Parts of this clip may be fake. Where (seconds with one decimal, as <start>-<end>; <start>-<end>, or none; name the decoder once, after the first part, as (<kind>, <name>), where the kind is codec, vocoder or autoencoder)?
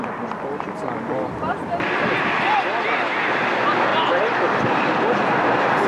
none